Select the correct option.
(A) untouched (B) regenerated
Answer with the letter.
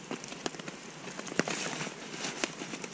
A